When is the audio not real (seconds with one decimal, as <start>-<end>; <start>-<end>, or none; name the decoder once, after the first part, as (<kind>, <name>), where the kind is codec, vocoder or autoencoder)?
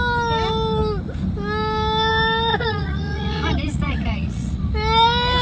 2.5-4.6 (vocoder, Vocos)